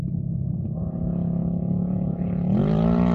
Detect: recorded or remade recorded